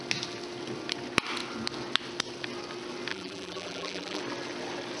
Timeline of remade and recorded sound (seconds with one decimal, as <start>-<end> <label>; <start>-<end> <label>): 0.0-3.1 recorded; 3.1-4.2 remade; 4.2-5.0 recorded